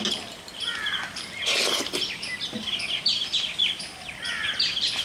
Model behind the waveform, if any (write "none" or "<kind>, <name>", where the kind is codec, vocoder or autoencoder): none